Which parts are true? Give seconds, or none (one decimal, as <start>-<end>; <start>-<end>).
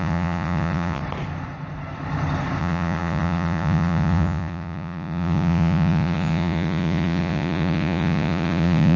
1.0-2.6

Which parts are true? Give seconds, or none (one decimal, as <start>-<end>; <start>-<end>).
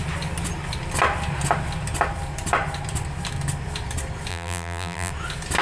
0.0-4.3; 5.1-5.6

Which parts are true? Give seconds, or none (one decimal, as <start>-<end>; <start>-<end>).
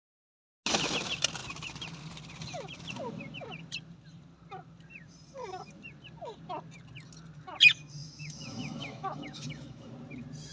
0.0-8.0; 9.9-10.5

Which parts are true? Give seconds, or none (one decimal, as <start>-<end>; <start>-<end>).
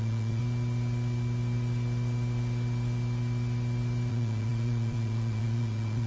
0.4-4.1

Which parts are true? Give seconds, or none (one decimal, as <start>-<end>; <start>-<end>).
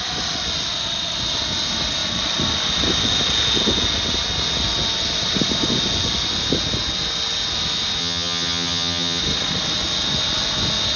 0.0-8.0; 9.2-11.0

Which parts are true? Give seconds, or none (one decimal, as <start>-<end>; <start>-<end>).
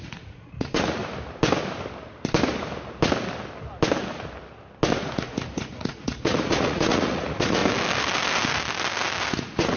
1.0-5.0; 7.6-9.3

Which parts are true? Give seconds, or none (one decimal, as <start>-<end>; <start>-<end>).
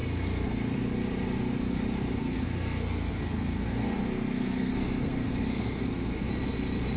0.0-2.2; 6.3-7.0